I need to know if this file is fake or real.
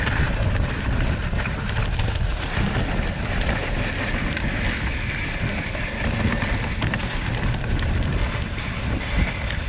real